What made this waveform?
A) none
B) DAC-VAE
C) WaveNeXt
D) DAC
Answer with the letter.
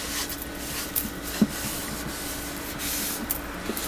A